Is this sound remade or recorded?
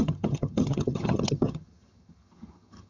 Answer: remade